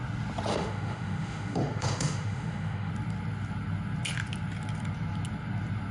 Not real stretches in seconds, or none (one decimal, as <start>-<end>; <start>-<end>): 0.5-2.9